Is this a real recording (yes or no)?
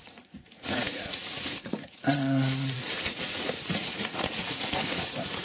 no